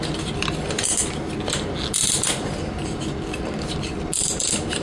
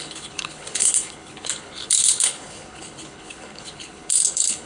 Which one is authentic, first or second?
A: first